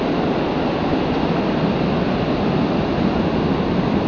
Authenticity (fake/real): real